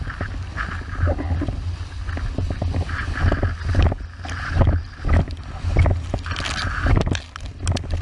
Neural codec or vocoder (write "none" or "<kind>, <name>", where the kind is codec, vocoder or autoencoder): none